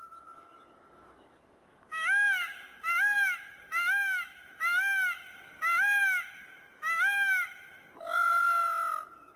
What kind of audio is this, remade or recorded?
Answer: remade